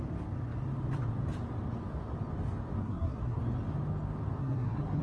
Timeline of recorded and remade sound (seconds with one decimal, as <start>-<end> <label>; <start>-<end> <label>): 0.0-2.8 recorded; 2.8-3.4 remade; 3.4-4.4 recorded; 4.4-5.0 remade